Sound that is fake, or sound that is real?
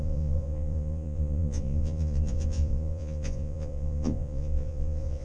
fake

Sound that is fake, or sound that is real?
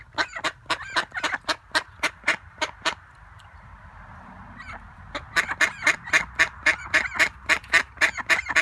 fake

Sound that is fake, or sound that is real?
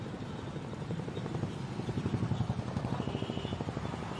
real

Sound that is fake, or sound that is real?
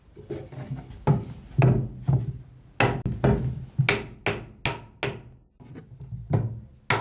real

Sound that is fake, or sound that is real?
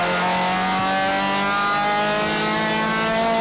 real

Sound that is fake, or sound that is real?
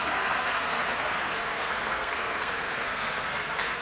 fake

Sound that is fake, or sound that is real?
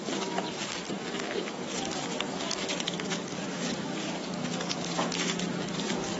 fake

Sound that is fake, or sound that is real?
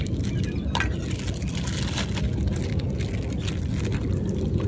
real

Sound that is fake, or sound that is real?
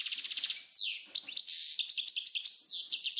real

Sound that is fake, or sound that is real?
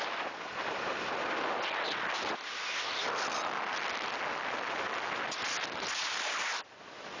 real